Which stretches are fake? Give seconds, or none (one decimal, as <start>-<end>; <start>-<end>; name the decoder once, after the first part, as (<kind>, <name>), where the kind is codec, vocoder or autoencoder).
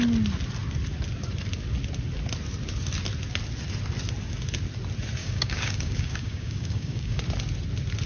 5.2-7.2 (codec, DAC)